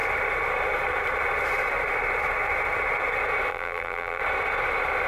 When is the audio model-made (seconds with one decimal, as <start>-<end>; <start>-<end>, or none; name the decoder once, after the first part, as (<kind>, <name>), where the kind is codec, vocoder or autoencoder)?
3.5-4.2 (vocoder, BigVGAN v2)